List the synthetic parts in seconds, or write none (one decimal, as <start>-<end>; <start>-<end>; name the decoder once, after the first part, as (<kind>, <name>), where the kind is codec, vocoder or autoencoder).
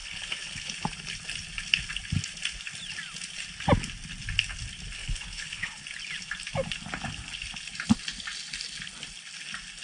0.0-0.7 (codec, HILCodec); 5.0-5.8